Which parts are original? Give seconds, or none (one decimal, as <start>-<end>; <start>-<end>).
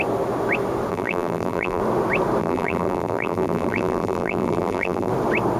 0.0-0.9; 1.8-2.4; 5.1-5.6